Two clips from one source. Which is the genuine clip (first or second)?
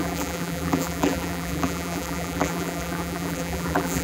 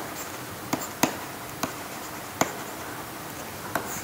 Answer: second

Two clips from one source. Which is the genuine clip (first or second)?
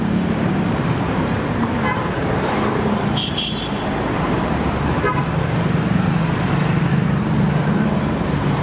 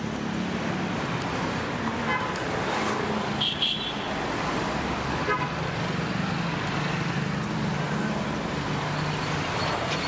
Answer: second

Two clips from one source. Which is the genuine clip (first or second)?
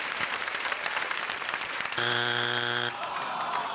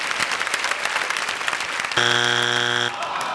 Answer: second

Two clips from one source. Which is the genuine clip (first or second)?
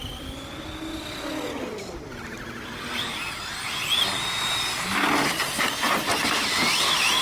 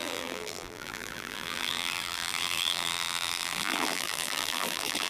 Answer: first